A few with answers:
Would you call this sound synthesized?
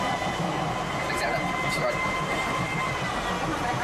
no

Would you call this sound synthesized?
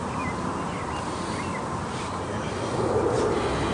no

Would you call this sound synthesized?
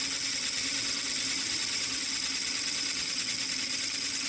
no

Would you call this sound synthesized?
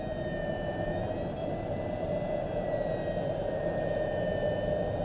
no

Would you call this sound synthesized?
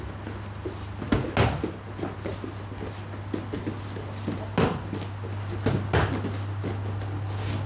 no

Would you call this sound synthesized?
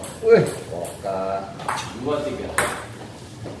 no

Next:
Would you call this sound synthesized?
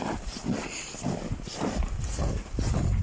no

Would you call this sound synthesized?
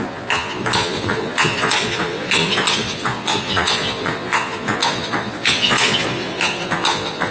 yes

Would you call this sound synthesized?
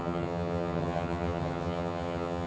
yes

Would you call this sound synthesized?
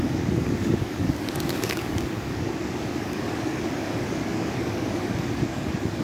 yes